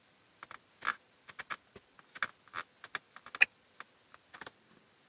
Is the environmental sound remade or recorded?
recorded